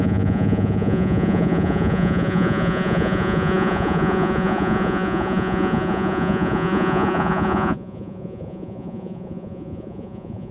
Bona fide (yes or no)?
no